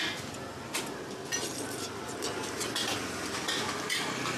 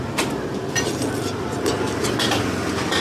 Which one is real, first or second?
first